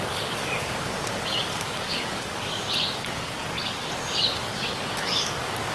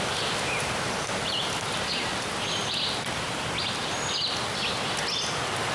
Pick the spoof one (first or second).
first